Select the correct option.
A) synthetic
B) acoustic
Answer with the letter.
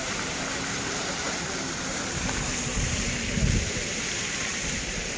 A